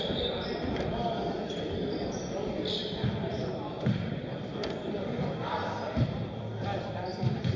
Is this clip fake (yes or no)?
yes